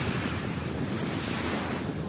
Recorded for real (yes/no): yes